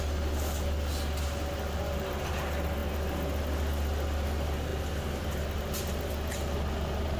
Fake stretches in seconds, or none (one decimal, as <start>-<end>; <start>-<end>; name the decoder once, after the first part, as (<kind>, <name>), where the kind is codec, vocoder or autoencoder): none